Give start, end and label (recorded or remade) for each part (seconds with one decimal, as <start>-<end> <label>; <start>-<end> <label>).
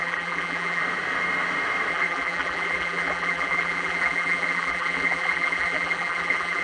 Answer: 0.0-0.8 remade; 0.8-1.9 recorded; 1.9-6.6 remade